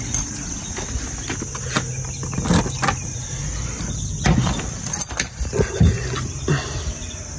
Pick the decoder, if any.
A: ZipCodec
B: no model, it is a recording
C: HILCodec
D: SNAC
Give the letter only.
B